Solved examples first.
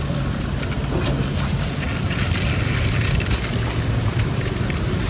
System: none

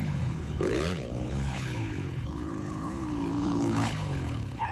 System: codec, HILCodec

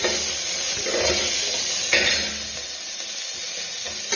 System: none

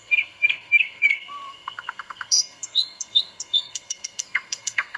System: codec, SNAC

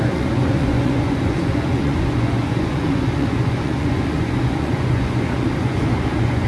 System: vocoder, Vocos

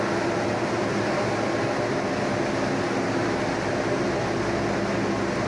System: none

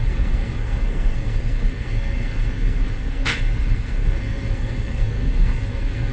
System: codec, SNAC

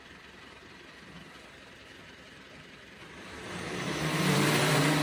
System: vocoder, BigVGAN v2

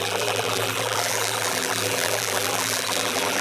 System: vocoder, BigVGAN v2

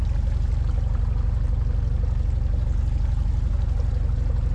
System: none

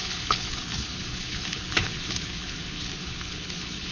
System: codec, HILCodec